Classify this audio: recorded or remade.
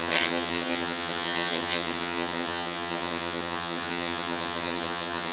remade